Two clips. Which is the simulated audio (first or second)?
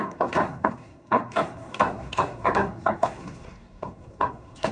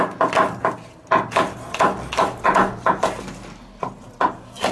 first